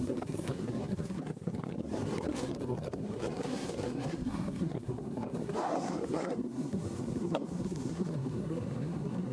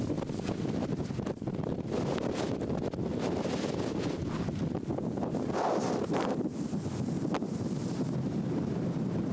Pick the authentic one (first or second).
second